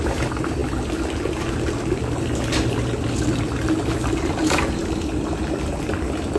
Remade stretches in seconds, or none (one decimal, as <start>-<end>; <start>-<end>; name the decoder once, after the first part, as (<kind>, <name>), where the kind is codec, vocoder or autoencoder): none